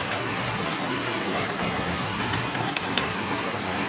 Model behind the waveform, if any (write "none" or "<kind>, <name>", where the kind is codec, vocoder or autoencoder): codec, SNAC